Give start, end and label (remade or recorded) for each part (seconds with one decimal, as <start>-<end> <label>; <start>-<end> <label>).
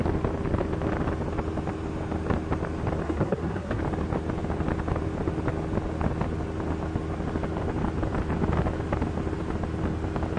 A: 0.0-3.0 recorded; 3.0-3.8 remade; 3.8-10.4 recorded